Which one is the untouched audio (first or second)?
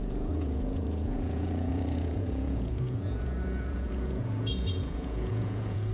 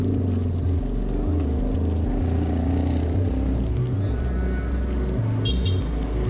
second